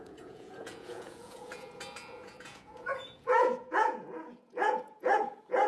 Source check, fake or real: fake